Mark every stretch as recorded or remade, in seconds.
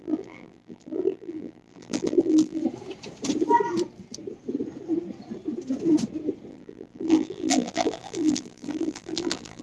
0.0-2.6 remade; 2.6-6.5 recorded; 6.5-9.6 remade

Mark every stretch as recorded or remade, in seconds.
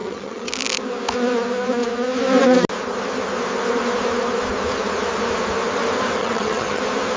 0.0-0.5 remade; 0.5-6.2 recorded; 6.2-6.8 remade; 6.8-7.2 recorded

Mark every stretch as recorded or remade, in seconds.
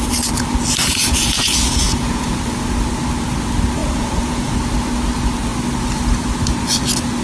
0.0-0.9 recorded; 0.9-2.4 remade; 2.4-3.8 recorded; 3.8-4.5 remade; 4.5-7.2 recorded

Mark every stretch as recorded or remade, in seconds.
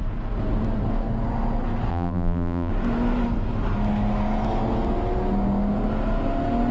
0.0-1.9 recorded; 1.9-2.7 remade; 2.7-6.7 recorded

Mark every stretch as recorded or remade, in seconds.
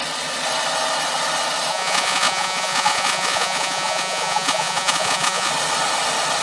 0.0-1.7 recorded; 1.7-5.5 remade; 5.5-6.4 recorded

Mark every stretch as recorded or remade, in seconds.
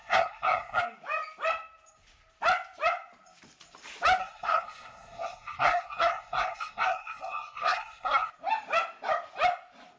0.0-0.8 remade; 0.8-4.2 recorded; 4.2-8.3 remade; 8.3-10.0 recorded